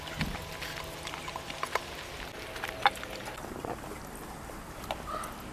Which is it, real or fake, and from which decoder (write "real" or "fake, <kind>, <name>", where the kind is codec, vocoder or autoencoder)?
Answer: real